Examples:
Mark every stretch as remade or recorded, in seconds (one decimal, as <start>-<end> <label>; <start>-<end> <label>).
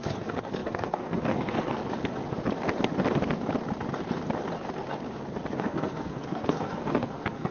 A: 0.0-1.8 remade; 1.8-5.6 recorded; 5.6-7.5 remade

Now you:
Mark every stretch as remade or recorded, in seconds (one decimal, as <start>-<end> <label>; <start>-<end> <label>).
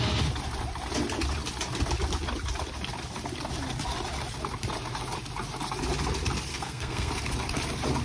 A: 0.0-6.5 recorded; 6.5-7.1 remade; 7.1-8.0 recorded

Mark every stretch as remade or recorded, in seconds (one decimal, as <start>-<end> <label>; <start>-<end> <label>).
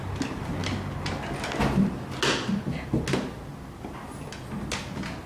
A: 0.0-5.3 recorded